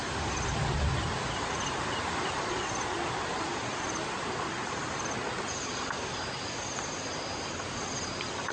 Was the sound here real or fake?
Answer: fake